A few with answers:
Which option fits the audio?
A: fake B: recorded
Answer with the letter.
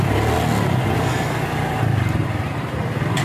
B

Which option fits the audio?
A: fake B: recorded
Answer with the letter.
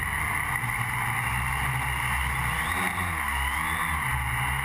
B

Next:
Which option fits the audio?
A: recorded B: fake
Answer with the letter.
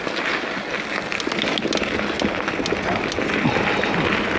A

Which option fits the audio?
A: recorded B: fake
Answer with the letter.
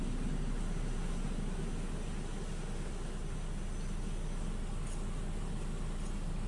A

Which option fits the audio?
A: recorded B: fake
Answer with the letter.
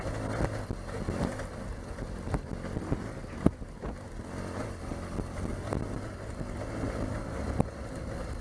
A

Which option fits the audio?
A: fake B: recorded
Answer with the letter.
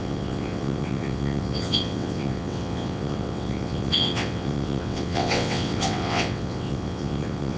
A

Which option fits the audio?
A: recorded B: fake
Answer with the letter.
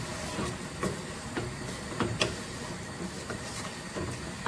A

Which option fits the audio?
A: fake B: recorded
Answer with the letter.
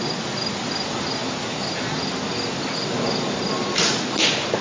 B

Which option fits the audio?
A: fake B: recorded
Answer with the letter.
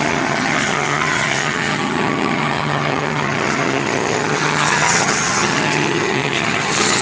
A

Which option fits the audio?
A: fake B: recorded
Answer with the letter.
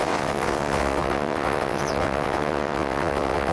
A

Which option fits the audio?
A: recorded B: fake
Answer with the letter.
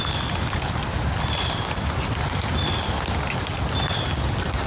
A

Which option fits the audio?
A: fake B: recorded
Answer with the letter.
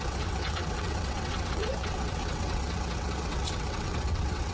A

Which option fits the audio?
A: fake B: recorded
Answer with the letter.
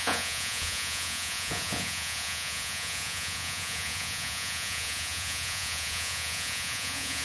A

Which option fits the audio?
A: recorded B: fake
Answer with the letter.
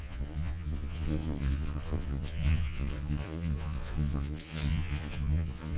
B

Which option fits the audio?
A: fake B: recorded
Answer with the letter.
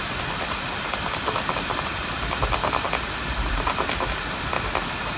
B